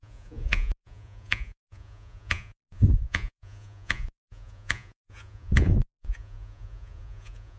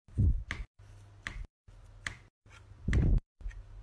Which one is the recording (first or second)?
second